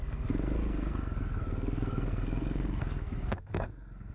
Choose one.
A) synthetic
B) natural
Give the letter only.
A